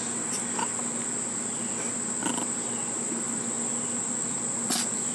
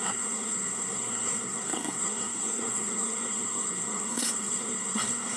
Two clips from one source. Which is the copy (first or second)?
second